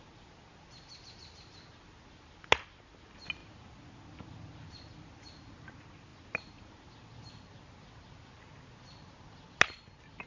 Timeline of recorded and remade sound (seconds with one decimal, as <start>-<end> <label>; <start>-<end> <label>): 0.0-10.3 recorded